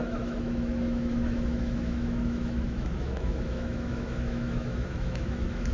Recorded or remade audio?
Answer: remade